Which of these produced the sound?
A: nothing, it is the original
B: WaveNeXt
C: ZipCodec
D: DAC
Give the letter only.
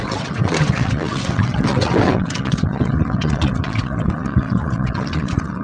B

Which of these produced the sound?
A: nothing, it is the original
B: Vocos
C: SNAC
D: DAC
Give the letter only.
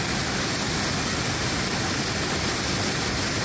A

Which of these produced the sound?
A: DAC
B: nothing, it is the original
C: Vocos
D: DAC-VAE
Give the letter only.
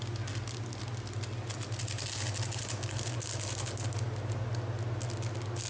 B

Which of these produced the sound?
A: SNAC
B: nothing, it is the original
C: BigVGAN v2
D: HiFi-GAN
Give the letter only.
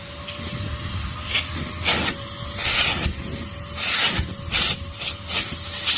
B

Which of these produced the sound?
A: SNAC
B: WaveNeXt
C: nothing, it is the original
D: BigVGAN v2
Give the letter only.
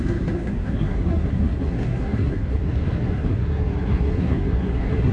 A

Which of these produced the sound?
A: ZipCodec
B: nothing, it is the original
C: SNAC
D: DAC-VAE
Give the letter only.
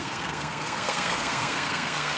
C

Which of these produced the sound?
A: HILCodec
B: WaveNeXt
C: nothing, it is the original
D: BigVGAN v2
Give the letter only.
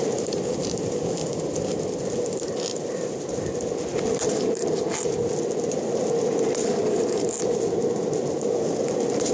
C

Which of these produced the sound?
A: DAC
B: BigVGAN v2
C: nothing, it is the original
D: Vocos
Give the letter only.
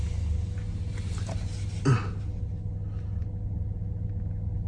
C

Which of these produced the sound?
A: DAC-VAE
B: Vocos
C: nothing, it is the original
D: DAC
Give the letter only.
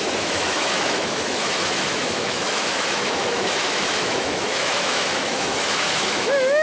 A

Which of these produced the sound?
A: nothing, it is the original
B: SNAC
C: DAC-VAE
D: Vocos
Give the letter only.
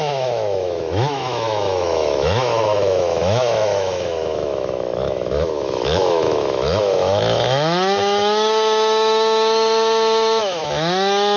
C